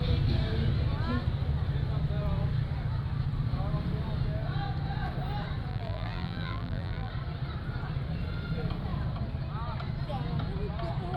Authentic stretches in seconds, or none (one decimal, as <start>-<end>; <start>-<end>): 0.0-5.7; 7.1-11.2